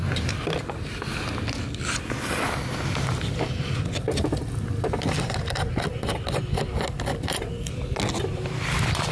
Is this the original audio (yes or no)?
yes